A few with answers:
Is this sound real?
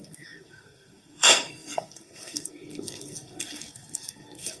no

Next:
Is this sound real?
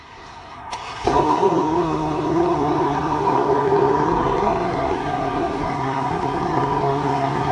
no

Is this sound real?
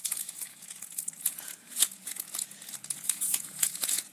no